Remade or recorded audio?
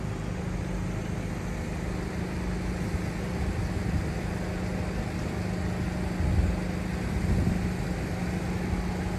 recorded